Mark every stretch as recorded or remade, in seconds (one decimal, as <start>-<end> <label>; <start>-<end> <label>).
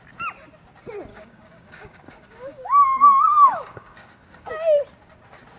0.0-1.1 recorded; 1.1-4.5 remade; 4.5-5.6 recorded